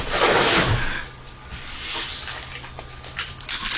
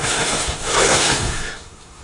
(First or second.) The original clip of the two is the first